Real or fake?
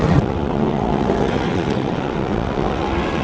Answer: fake